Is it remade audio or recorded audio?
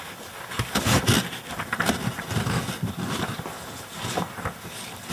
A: recorded